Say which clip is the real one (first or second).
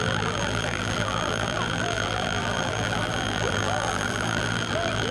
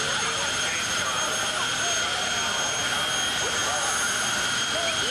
second